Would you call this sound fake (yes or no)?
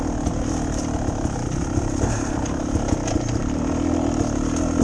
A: no